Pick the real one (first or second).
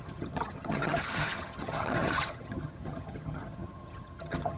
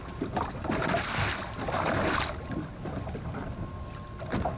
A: second